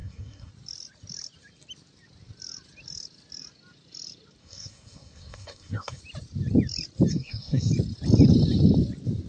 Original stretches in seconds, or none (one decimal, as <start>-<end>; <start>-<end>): 0.5-4.4; 6.0-7.1; 7.7-9.3